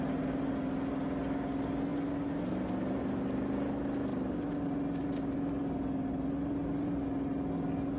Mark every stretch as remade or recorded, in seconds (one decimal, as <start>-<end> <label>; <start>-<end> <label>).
0.0-8.0 recorded